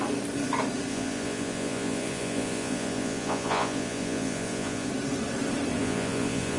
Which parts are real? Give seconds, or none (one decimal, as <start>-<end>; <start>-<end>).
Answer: 0.0-0.9; 4.9-5.8